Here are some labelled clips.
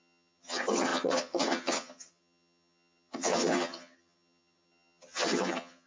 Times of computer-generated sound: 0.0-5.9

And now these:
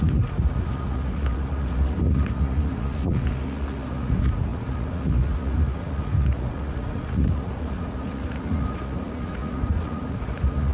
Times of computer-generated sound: 0.0-10.7

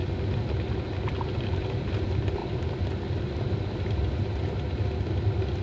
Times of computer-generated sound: none